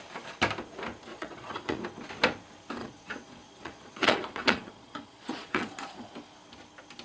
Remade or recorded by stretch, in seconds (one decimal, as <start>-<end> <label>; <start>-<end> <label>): 0.0-1.1 recorded; 1.1-1.8 remade; 1.8-2.8 recorded; 2.8-6.1 remade; 6.1-7.0 recorded